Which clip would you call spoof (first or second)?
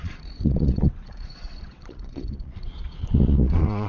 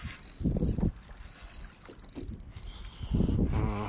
first